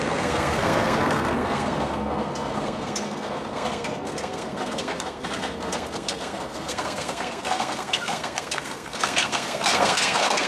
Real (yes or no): no